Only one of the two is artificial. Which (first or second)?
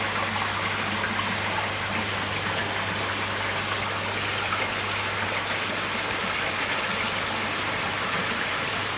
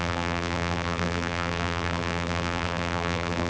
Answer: second